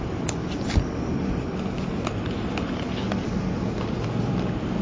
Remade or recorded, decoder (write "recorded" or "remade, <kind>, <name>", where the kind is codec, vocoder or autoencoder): remade, vocoder, BigVGAN v2